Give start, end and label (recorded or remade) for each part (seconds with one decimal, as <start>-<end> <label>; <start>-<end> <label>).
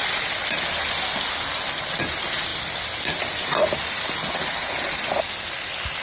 0.0-6.0 recorded